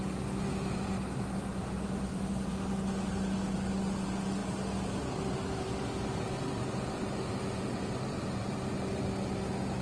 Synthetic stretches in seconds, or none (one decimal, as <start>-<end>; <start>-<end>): none